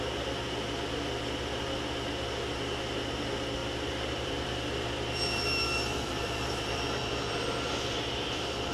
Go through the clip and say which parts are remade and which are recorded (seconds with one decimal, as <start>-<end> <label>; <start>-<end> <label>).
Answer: 0.0-3.6 recorded; 3.6-8.7 remade